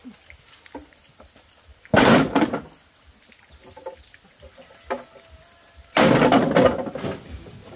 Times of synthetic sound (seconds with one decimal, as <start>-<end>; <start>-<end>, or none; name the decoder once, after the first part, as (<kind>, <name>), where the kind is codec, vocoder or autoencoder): none